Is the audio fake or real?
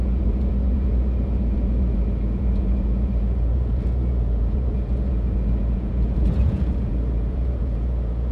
fake